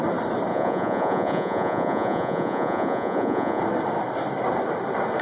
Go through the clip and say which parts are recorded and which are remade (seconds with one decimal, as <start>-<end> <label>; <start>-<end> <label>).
0.0-0.5 recorded; 0.5-3.6 remade; 3.6-5.2 recorded